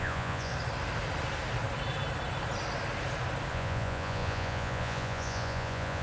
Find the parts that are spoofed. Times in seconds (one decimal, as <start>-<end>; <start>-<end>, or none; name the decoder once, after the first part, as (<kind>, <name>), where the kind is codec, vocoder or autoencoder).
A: 0.0-0.5 (vocoder, Vocos); 3.5-6.0